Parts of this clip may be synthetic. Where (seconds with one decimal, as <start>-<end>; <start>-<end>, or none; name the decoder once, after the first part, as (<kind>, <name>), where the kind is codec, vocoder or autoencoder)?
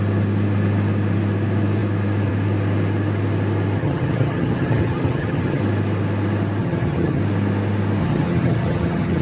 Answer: 3.8-5.6 (vocoder, HiFi-GAN); 6.6-7.2; 8.0-9.2